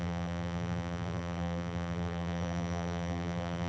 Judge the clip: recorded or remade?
remade